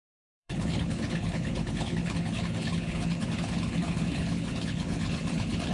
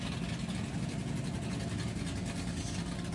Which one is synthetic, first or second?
first